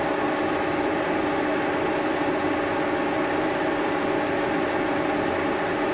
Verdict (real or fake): real